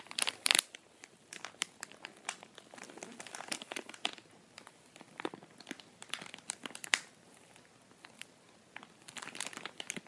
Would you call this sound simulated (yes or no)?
no